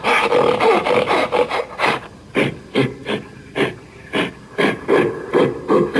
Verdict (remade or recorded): recorded